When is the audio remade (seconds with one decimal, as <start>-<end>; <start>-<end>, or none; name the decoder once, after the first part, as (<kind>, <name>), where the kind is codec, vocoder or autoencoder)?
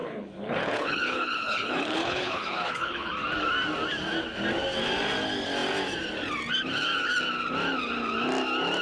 0.0-3.1 (codec, HILCodec)